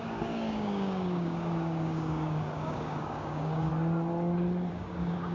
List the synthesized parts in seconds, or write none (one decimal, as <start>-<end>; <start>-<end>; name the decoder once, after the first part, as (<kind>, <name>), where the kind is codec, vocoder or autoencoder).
0.0-3.7 (codec, DAC); 4.7-5.3

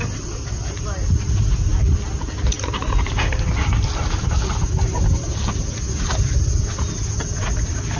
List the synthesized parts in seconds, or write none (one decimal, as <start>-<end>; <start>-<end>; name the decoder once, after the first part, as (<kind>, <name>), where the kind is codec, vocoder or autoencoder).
none

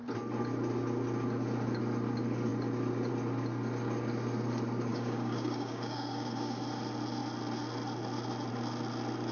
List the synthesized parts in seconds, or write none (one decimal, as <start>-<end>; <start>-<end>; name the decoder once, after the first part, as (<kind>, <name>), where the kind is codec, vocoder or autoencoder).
4.9-6.6 (codec, DAC)

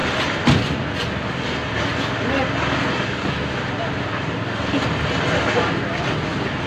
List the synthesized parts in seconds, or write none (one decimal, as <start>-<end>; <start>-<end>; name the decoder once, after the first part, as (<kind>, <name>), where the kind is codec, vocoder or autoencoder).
none